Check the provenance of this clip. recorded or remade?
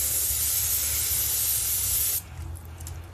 recorded